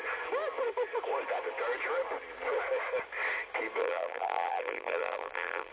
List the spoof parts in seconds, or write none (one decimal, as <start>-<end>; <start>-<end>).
3.8-5.7